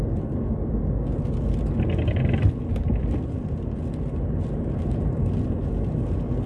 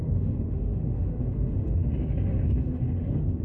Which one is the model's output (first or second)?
second